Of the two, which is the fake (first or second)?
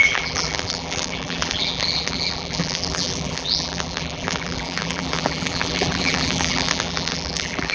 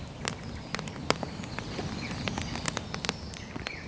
first